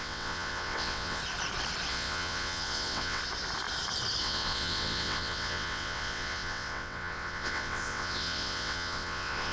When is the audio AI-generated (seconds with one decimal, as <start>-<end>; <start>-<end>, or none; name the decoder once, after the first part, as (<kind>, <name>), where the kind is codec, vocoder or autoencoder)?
0.0-1.2 (vocoder, WaveNeXt); 1.9-3.2; 4.2-9.5